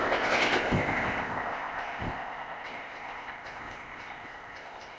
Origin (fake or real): fake